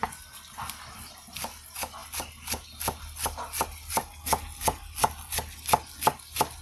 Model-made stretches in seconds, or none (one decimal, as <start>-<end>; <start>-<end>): none